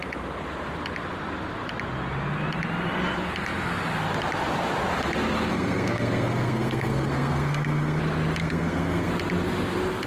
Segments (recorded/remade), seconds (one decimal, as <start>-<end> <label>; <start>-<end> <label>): 0.0-5.5 recorded; 5.5-8.0 remade; 8.0-8.4 recorded; 8.4-9.1 remade; 9.1-10.1 recorded